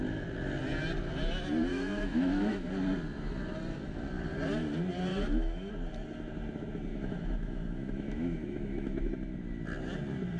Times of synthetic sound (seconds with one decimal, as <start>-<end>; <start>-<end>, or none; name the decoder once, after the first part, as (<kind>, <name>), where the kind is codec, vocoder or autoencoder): 1.7-2.7 (autoencoder, DAC-VAE); 5.1-5.7; 6.9-9.1

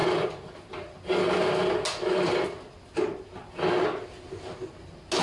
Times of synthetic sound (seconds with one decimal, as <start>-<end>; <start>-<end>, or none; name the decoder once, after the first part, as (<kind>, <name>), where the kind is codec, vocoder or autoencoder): none

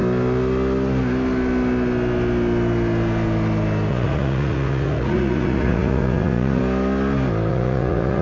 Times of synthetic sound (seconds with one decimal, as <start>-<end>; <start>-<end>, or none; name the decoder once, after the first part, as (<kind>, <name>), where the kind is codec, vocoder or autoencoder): 3.9-6.6 (vocoder, Vocos); 7.5-8.2

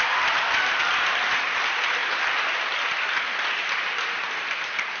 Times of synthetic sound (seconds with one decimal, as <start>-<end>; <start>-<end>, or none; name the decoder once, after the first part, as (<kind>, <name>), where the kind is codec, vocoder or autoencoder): none

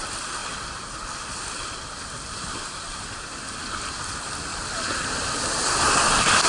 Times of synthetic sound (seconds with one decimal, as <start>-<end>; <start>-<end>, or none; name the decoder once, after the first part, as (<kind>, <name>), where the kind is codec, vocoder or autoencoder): 0.4-3.7 (vocoder, BigVGAN v2); 4.5-5.4

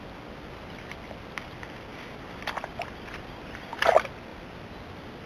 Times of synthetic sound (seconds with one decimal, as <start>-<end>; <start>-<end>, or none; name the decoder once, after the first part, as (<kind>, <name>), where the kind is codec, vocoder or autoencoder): none

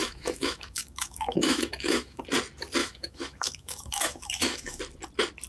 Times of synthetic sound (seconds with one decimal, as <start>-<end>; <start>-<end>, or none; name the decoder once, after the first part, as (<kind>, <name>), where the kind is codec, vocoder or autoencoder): 0.0-2.2 (autoencoder, DAC-VAE); 2.8-4.8